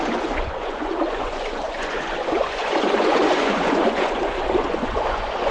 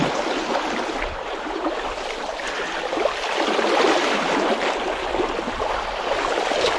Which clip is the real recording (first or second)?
second